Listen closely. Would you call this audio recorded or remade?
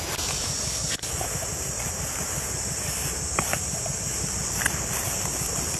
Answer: recorded